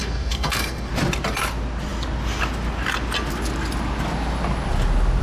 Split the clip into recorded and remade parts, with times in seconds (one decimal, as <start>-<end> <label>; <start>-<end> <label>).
0.0-0.9 remade; 0.9-5.2 recorded